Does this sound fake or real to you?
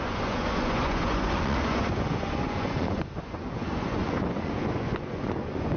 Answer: fake